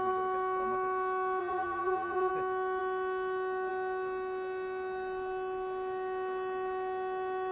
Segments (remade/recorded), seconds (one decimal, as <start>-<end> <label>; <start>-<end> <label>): 0.0-1.4 recorded; 1.4-2.3 remade; 2.3-7.5 recorded